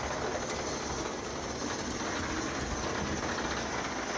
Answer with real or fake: real